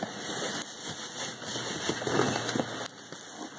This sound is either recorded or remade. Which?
recorded